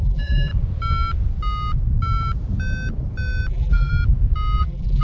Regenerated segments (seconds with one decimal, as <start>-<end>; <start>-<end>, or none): 0.0-0.5; 3.5-3.9; 4.6-5.0